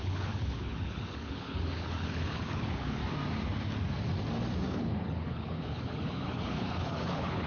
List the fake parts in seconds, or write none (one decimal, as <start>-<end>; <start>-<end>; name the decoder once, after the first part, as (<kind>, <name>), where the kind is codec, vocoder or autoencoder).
0.0-3.0 (codec, HILCodec); 4.7-7.5